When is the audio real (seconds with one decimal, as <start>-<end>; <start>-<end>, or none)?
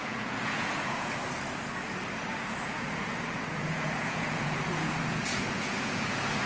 1.2-2.6